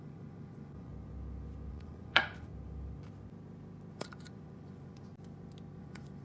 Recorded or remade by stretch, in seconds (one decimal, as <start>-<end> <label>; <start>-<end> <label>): 0.0-0.9 remade; 0.9-1.7 recorded; 1.7-2.5 remade; 2.5-3.9 recorded; 3.9-5.1 remade; 5.1-5.8 recorded; 5.8-6.2 remade